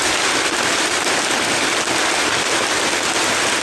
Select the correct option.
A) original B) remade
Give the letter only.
A